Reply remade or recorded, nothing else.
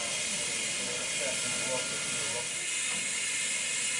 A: recorded